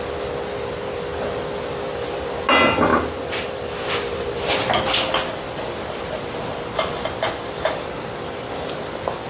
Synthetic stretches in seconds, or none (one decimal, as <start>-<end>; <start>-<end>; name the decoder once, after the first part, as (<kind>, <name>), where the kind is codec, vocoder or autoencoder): none